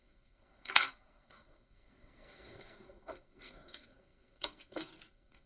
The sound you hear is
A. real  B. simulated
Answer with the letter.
B